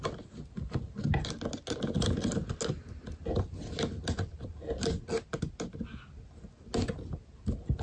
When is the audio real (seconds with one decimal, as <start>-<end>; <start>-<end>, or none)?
0.0-7.8